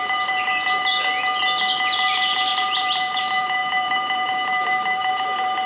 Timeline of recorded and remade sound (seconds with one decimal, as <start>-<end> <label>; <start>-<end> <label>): 0.0-0.9 remade; 0.9-2.1 recorded; 2.1-5.7 remade